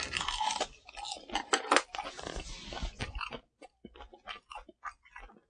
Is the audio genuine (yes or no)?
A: yes